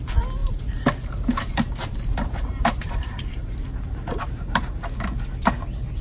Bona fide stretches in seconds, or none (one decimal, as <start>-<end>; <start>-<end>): 0.0-0.4; 3.5-4.1; 4.6-6.0